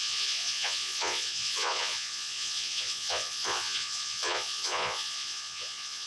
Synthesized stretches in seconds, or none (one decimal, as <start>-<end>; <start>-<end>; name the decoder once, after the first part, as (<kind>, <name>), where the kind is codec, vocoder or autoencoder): 0.0-6.1 (vocoder, Vocos)